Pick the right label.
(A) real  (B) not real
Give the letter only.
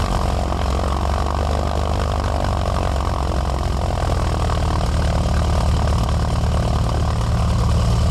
A